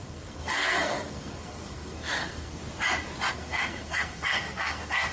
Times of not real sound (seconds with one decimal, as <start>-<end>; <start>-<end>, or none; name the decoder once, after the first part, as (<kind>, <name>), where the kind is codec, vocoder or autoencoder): 0.0-2.6 (codec, SNAC); 3.3-5.1